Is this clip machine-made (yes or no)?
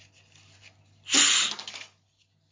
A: no